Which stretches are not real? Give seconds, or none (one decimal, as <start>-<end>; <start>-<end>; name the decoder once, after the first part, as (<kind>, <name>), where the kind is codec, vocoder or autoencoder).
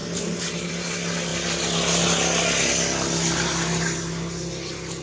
none